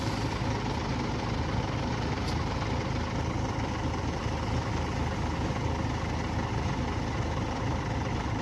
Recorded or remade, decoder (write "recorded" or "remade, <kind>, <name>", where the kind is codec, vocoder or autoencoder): recorded